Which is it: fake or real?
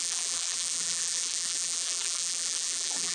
fake